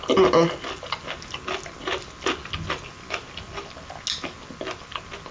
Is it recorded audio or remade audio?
recorded